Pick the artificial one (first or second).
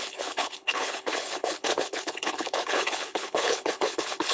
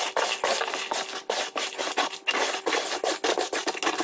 first